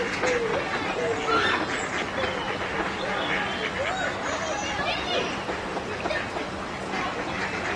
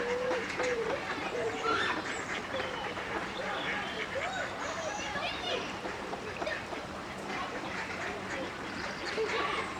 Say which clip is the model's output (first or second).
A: second